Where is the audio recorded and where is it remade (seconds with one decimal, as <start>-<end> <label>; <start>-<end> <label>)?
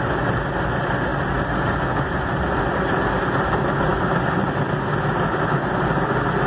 0.0-3.9 recorded; 3.9-4.6 remade; 4.6-6.5 recorded